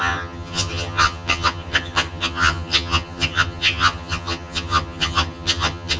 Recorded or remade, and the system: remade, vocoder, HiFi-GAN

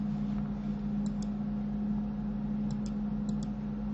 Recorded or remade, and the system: recorded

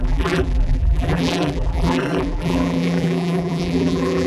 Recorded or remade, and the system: remade, vocoder, BigVGAN v2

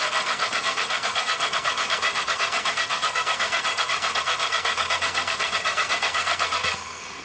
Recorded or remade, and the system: remade, codec, SNAC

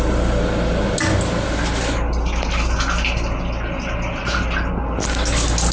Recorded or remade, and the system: recorded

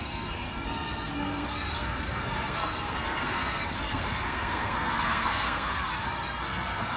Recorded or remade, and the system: remade, codec, SNAC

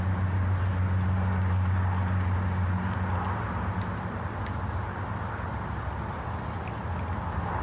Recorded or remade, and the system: recorded